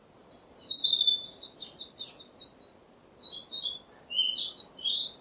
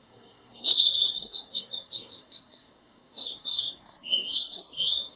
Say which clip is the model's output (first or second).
second